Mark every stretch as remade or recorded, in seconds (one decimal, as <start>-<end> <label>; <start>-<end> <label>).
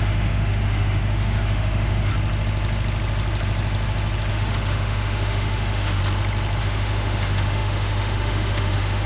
0.0-2.1 remade; 2.1-4.3 recorded; 4.3-6.0 remade; 6.0-6.6 recorded; 6.6-9.1 remade